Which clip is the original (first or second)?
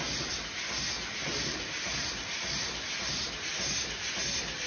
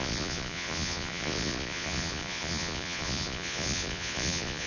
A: first